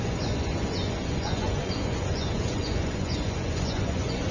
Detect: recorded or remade remade